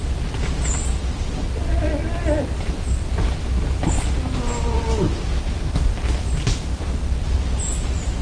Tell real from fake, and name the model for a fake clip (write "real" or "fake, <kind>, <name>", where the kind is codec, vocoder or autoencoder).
real